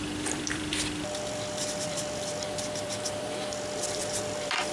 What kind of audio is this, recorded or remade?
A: remade